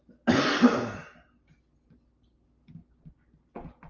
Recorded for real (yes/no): yes